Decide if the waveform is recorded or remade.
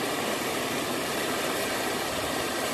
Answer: remade